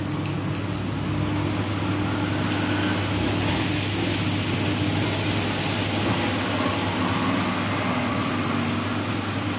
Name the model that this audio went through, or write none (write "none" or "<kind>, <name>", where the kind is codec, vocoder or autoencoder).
none